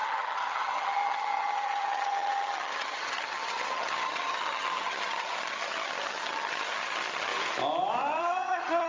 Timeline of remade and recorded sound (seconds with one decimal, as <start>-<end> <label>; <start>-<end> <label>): 0.0-7.3 remade; 7.3-8.2 recorded; 8.2-8.9 remade